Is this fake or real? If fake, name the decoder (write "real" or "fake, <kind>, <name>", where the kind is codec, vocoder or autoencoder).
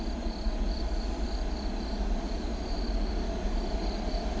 real